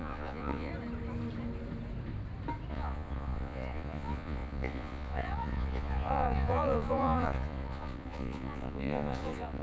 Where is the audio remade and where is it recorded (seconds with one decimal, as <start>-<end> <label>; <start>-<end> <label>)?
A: 0.0-0.7 remade; 0.7-2.7 recorded; 2.7-9.6 remade